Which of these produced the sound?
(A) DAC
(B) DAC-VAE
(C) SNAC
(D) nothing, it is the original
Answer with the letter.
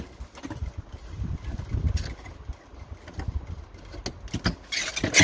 D